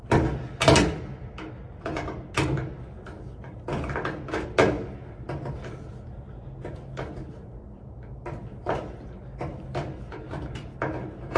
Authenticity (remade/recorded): recorded